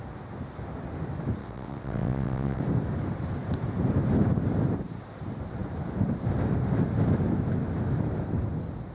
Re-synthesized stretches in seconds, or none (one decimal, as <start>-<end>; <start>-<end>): 1.4-2.6